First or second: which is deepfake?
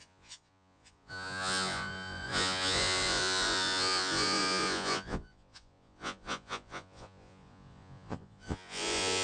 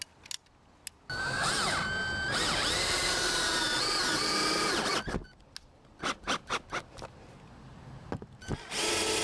first